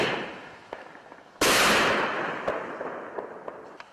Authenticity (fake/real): real